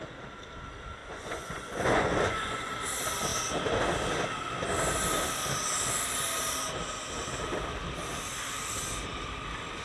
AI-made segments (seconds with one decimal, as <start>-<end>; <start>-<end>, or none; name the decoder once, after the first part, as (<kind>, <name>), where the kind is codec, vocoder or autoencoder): 1.0-2.7 (vocoder, Vocos)